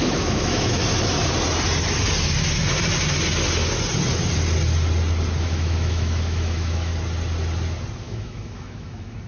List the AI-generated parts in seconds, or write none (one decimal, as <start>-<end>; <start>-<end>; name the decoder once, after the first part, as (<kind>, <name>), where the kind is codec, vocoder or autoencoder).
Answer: 0.0-0.8 (autoencoder, DAC-VAE); 5.4-6.9; 8.0-9.3